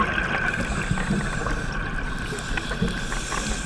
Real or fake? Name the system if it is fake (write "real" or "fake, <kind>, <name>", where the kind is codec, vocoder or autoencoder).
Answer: real